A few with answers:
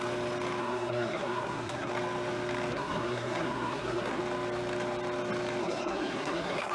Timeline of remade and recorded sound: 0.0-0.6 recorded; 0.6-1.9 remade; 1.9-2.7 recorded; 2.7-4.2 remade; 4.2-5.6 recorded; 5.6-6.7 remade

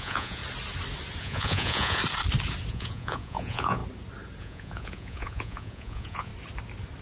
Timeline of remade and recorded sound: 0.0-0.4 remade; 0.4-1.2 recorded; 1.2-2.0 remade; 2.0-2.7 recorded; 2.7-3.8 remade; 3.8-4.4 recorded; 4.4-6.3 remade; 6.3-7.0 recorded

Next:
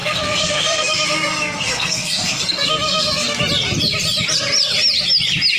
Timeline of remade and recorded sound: 0.0-3.4 remade; 3.4-5.6 recorded

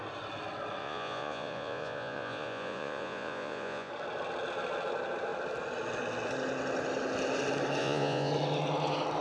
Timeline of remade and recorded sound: 0.0-0.8 recorded; 0.8-3.9 remade; 3.9-7.8 recorded; 7.8-8.3 remade; 8.3-9.2 recorded

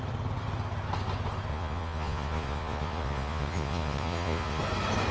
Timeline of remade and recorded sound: 0.0-1.5 recorded; 1.5-4.6 remade; 4.6-5.1 recorded

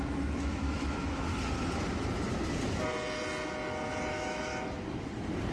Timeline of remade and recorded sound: 0.0-1.3 remade; 1.3-4.1 recorded; 4.1-4.5 remade; 4.5-5.5 recorded

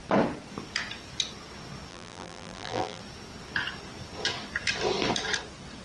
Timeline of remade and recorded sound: 0.0-1.9 recorded; 1.9-3.0 remade; 3.0-5.8 recorded

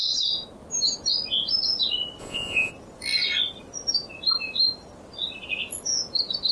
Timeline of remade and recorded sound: 0.0-2.2 recorded; 2.2-2.7 remade; 2.7-6.5 recorded